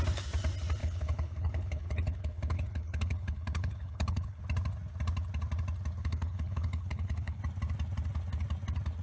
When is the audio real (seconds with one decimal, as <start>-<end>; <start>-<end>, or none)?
0.0-0.8; 4.4-6.0; 7.4-9.0